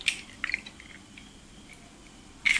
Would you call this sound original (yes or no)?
yes